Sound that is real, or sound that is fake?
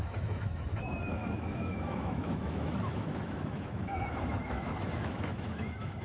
fake